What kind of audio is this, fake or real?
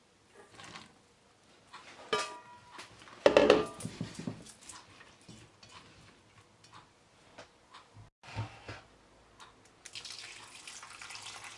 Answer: real